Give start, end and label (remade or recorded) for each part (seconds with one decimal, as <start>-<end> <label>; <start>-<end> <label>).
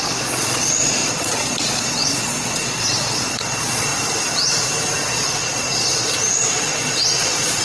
0.0-3.9 remade; 3.9-5.1 recorded; 5.1-7.6 remade